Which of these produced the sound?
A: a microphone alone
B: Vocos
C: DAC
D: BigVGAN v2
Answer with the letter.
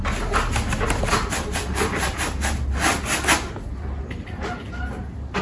A